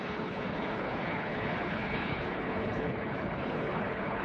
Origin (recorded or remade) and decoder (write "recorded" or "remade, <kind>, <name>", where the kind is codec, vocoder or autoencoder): remade, codec, HILCodec